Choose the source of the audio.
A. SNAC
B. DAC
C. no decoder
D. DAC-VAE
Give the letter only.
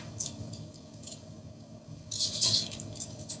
B